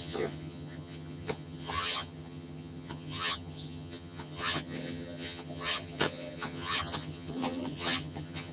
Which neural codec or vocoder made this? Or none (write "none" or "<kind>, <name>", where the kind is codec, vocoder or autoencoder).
vocoder, HiFi-GAN